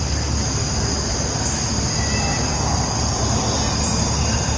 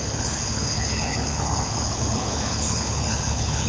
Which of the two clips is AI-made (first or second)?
second